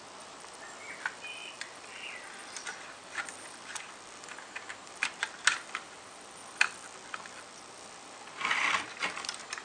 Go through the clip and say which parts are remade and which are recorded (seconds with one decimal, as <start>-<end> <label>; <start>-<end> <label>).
0.0-9.6 recorded